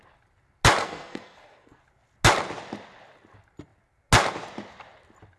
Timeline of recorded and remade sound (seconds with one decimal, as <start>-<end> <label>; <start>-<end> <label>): 0.0-0.8 recorded; 0.8-1.8 remade; 1.8-5.4 recorded